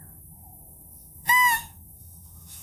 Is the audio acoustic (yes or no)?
no